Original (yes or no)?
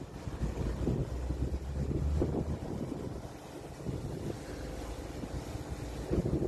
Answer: yes